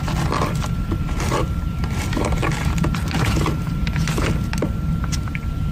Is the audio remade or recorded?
recorded